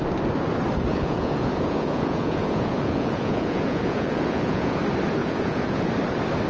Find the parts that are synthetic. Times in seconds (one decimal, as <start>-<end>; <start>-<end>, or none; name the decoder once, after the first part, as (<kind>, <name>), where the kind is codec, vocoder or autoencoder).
0.9-4.8 (vocoder, Vocos); 5.2-5.9